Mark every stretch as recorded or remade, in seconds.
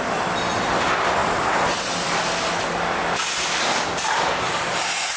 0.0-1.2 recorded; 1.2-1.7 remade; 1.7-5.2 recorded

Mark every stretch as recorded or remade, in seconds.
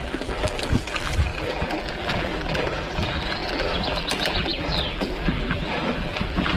0.0-6.6 remade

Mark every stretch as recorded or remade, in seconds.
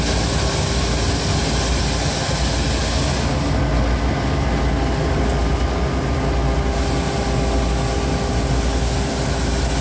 0.0-9.8 recorded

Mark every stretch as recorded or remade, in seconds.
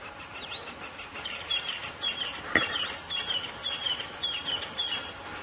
0.0-5.4 recorded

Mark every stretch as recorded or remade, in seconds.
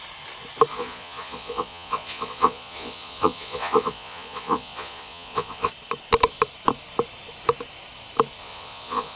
0.0-0.7 recorded; 0.7-5.7 remade; 5.7-8.4 recorded; 8.4-9.2 remade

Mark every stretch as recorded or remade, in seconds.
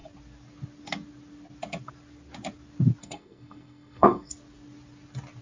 0.0-3.0 recorded; 3.0-4.3 remade; 4.3-5.4 recorded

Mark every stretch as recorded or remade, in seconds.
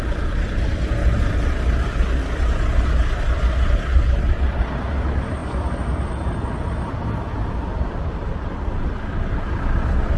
0.0-10.2 recorded